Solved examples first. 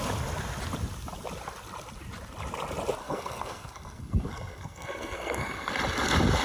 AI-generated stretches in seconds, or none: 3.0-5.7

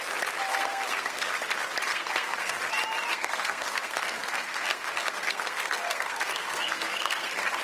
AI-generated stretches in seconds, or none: 0.5-1.3; 1.9-2.5; 3.1-7.6

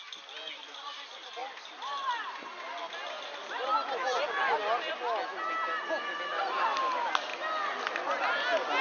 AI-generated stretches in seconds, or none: none

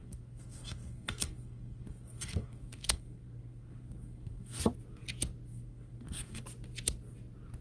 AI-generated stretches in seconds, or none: 0.0-4.6; 5.5-6.4

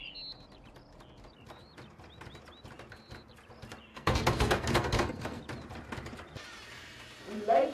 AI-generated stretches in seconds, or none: 3.9-5.4